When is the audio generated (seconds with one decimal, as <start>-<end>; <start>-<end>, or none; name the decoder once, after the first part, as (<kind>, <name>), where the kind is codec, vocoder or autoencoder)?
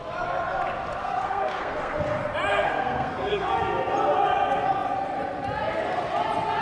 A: 1.0-2.0 (codec, SNAC); 2.5-3.5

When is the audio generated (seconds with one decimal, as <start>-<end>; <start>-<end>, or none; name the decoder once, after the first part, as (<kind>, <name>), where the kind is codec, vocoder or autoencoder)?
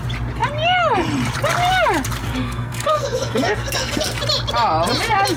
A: 2.2-4.2 (codec, SNAC)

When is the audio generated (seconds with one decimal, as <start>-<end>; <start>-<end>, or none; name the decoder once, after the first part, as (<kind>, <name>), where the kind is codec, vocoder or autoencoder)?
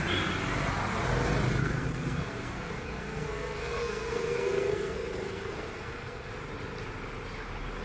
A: 1.6-6.3 (codec, SNAC)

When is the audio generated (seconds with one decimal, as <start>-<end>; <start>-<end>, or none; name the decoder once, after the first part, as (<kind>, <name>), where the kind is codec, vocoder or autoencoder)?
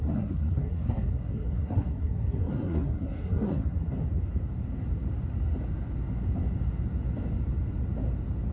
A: 0.0-3.9 (codec, SNAC)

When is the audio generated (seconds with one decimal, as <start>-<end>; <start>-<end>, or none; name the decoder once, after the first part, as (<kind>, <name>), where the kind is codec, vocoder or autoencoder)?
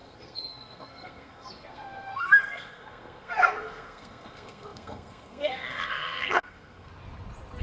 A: 0.0-6.9 (codec, SNAC)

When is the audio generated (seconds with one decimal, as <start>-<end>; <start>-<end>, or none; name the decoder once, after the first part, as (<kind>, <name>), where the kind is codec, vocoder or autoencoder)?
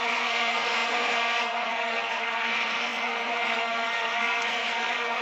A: 0.0-5.2 (codec, SNAC)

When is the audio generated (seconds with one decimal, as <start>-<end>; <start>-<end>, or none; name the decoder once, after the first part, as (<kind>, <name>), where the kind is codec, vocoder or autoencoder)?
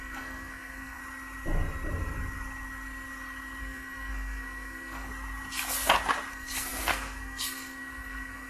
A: 0.0-1.0 (codec, SNAC); 3.6-5.1; 6.3-8.5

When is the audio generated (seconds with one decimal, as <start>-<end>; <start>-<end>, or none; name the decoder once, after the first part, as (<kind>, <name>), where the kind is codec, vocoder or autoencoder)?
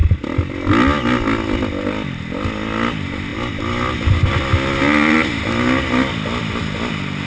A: none